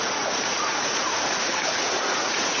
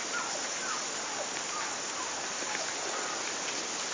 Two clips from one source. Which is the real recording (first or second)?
second